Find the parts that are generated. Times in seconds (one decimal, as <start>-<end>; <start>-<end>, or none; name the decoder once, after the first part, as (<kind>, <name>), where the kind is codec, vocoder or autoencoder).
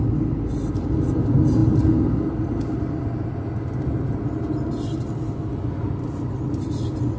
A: none